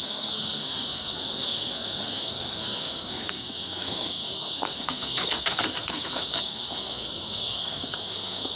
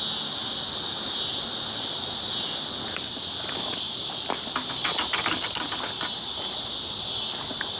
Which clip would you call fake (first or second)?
first